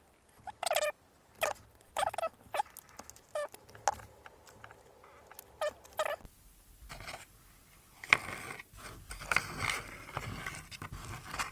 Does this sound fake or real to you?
real